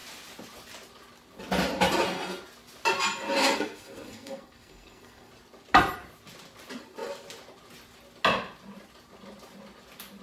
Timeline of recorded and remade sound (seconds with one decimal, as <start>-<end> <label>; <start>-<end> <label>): 0.0-3.4 recorded; 3.4-5.3 remade; 5.3-10.2 recorded